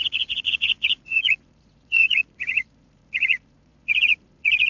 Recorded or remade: remade